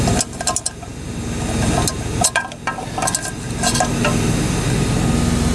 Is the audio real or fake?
real